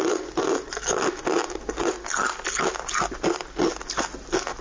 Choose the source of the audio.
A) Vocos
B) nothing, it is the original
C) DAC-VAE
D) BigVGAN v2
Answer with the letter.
B